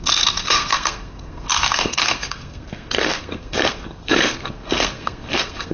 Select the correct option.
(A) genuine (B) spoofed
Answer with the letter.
B